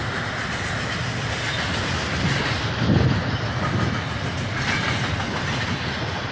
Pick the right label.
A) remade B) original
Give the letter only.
B